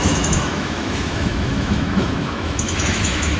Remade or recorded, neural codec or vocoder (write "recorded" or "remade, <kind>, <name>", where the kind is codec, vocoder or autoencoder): remade, autoencoder, DAC-VAE